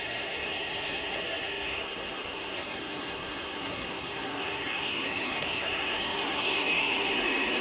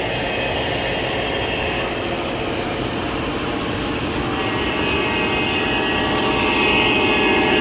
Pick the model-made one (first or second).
first